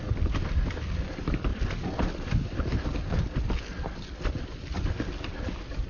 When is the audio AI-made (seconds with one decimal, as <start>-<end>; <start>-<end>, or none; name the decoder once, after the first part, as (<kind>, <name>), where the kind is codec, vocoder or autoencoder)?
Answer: none